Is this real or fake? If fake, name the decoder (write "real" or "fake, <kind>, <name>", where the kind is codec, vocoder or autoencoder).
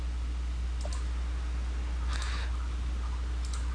real